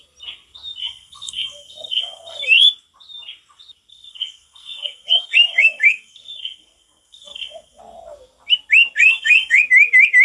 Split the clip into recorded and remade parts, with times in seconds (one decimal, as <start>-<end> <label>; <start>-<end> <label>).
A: 0.0-0.8 recorded; 0.8-2.7 remade; 2.7-3.9 recorded; 3.9-7.8 remade; 7.8-9.0 recorded; 9.0-9.6 remade; 9.6-10.2 recorded